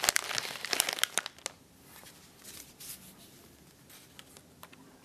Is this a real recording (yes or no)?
yes